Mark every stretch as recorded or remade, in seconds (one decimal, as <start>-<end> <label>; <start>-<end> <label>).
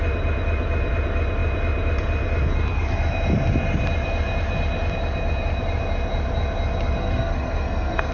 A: 0.0-7.0 recorded; 7.0-8.1 remade